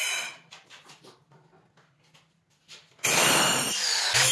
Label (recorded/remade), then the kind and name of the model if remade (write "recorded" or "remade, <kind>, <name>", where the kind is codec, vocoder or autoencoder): recorded